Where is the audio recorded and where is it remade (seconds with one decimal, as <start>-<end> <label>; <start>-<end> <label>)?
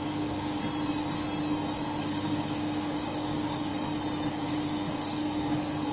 0.0-0.6 remade; 0.6-2.0 recorded; 2.0-3.7 remade; 3.7-4.3 recorded; 4.3-5.9 remade